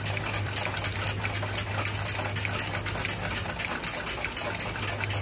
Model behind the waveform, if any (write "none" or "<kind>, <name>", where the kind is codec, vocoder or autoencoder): none